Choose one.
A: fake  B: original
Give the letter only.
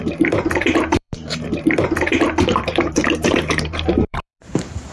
A